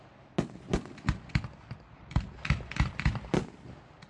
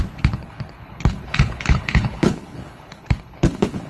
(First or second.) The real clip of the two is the first